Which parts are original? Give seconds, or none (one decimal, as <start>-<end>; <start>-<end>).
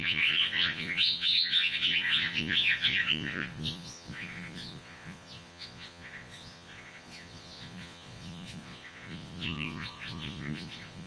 none